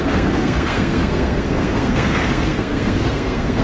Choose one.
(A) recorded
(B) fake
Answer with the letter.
B